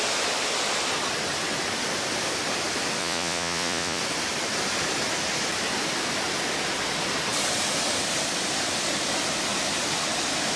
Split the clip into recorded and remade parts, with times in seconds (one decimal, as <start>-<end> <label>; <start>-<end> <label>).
0.0-3.0 recorded; 3.0-4.0 remade; 4.0-10.6 recorded